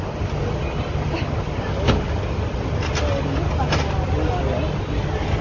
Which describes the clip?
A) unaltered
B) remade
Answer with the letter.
A